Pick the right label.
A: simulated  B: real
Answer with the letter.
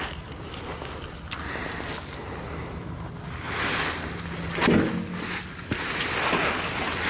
B